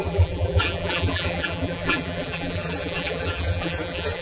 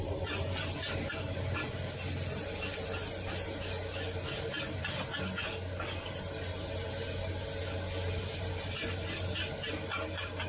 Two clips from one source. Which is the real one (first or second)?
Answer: second